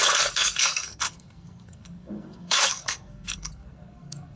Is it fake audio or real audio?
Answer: fake